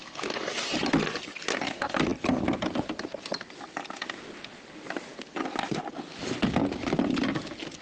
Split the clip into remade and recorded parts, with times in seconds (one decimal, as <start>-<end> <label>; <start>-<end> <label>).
0.0-0.5 remade; 0.5-7.8 recorded